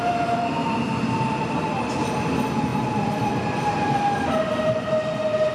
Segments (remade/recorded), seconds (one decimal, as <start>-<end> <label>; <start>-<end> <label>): 0.0-2.7 recorded; 2.7-3.9 remade; 3.9-5.5 recorded